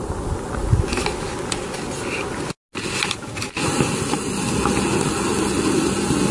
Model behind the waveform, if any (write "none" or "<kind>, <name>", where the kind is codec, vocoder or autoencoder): none